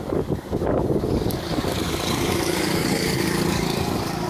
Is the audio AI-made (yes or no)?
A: yes